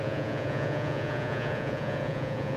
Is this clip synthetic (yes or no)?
yes